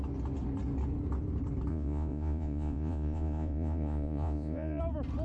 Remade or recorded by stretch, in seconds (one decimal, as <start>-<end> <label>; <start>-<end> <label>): 0.0-1.7 recorded; 1.7-4.8 remade; 4.8-5.2 recorded